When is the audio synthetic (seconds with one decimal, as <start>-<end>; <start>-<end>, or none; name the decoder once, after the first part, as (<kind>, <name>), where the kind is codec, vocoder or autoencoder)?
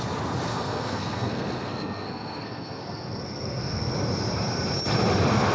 0.5-3.8 (codec, SNAC)